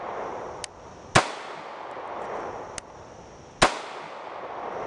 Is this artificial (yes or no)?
no